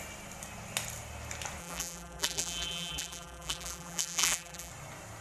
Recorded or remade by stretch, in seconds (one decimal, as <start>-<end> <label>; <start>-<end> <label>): 0.0-1.6 recorded; 1.6-4.7 remade; 4.7-5.2 recorded